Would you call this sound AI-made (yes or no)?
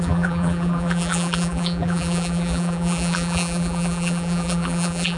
yes